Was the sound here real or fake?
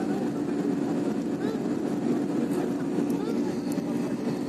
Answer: real